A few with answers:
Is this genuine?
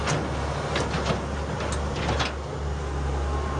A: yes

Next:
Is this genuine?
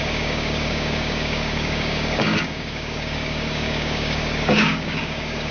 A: no